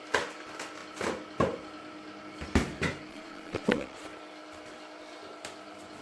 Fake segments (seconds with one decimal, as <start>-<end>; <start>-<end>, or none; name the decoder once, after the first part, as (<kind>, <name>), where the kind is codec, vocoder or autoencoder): 3.1-4.0 (vocoder, Vocos)